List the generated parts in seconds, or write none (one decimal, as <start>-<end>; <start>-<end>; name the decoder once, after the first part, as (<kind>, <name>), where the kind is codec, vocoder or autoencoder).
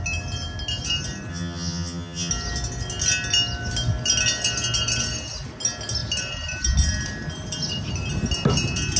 1.3-2.3 (vocoder, HiFi-GAN)